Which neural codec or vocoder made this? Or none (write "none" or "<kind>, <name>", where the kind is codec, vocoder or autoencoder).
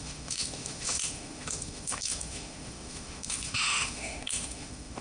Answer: autoencoder, DAC-VAE